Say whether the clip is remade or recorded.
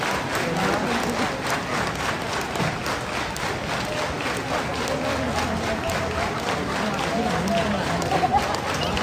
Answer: recorded